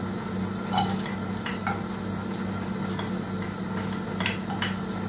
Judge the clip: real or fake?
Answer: real